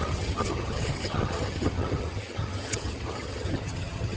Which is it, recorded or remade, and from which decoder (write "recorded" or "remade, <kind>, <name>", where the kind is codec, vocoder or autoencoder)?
remade, vocoder, HiFi-GAN